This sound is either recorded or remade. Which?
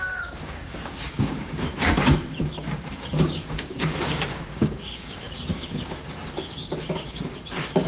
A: remade